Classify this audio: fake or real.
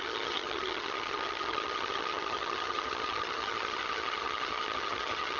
fake